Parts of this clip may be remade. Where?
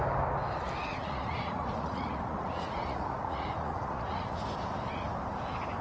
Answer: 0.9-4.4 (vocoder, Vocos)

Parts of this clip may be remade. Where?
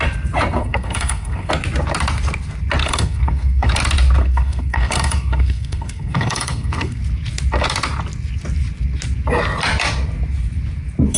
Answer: 0.6-1.5 (codec, SNAC); 2.8-3.7; 4.2-7.0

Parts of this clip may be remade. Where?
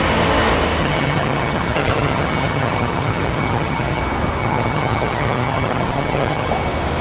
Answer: 0.8-4.0 (vocoder, HiFi-GAN); 4.4-6.5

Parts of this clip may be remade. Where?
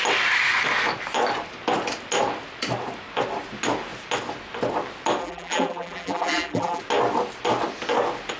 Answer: 5.2-6.8 (vocoder, BigVGAN v2)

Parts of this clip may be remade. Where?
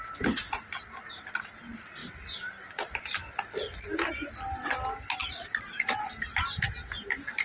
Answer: 5.2-6.0 (vocoder, BigVGAN v2)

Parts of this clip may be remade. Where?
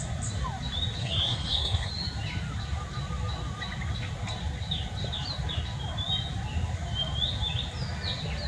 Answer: 1.0-1.9 (codec, SNAC)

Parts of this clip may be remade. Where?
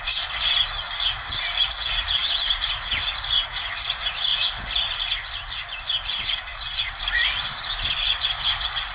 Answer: 6.5-8.9 (vocoder, BigVGAN v2)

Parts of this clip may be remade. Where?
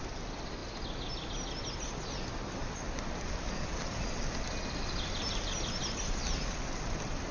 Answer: none